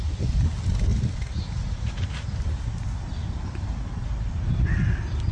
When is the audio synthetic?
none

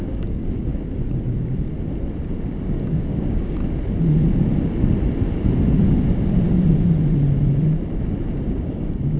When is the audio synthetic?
0.0-0.7; 2.5-3.6; 8.6-9.2

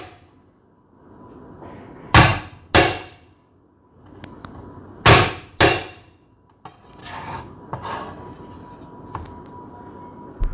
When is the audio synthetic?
7.0-7.6

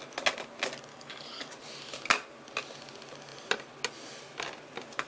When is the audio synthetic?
0.9-1.5

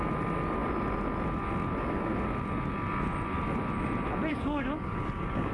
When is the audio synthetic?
4.3-5.5

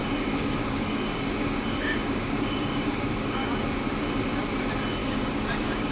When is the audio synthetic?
0.0-3.5; 5.0-5.9

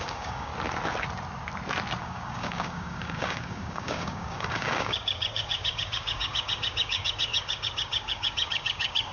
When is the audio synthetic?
0.0-0.5; 2.0-9.1

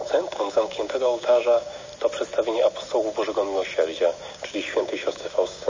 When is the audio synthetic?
0.0-1.9; 4.3-5.7